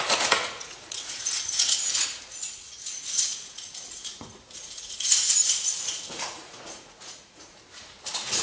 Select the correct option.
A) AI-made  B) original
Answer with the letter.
A